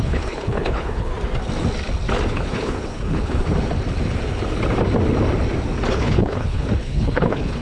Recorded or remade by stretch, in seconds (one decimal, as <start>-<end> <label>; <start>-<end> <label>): 0.0-1.1 remade; 1.1-2.3 recorded; 2.3-3.4 remade; 3.4-5.9 recorded; 5.9-7.6 remade